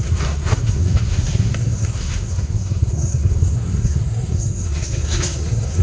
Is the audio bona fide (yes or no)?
no